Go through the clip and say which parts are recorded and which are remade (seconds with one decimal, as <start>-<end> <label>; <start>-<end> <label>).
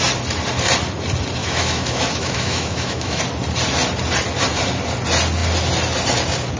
0.0-1.4 recorded; 1.4-3.2 remade; 3.2-6.6 recorded